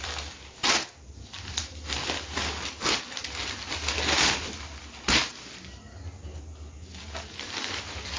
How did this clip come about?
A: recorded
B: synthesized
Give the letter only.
A